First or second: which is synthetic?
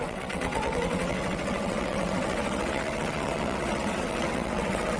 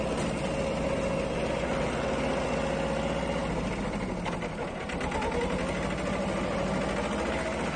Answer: first